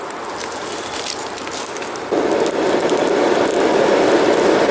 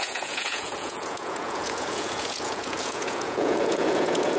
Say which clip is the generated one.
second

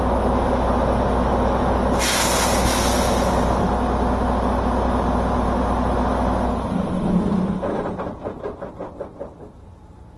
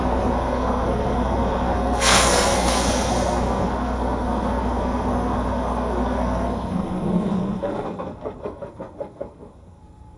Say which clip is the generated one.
second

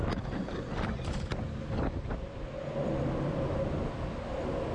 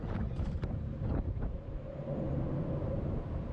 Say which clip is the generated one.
second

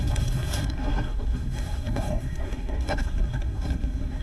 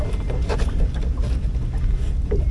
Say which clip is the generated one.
first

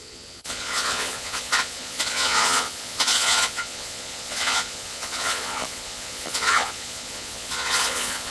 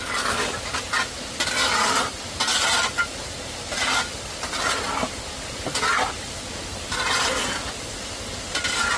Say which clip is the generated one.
first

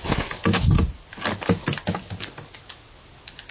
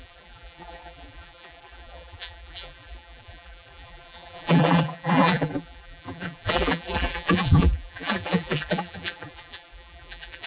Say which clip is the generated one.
second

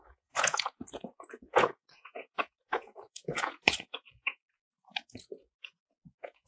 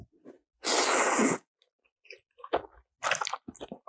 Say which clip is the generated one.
first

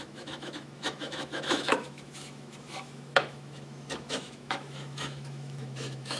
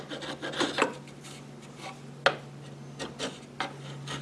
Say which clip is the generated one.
first